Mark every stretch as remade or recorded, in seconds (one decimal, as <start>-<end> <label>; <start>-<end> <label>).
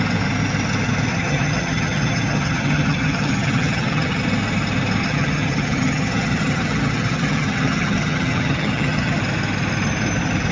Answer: 0.0-1.1 recorded; 1.1-4.2 remade; 4.2-5.0 recorded; 5.0-9.2 remade; 9.2-10.5 recorded